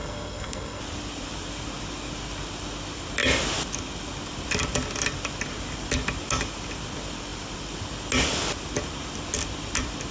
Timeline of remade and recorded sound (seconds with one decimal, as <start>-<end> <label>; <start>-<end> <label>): 0.0-0.8 remade; 0.8-10.1 recorded